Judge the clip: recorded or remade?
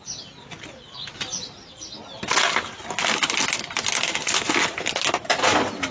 recorded